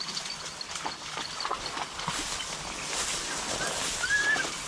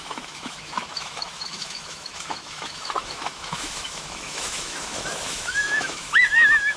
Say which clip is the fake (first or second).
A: second